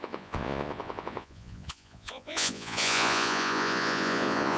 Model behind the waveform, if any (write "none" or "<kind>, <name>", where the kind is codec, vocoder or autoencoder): vocoder, Vocos